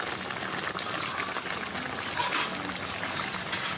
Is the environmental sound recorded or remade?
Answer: recorded